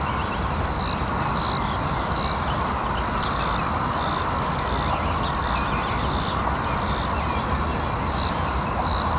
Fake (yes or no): no